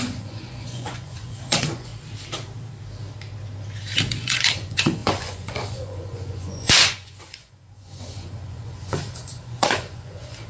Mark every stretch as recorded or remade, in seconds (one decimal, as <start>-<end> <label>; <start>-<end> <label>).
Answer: 0.0-1.9 remade; 1.9-4.1 recorded; 4.1-10.5 remade